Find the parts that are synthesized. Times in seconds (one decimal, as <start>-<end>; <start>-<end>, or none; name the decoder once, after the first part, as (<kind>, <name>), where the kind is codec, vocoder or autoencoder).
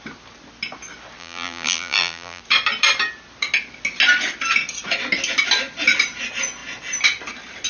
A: 1.2-2.4 (vocoder, BigVGAN v2)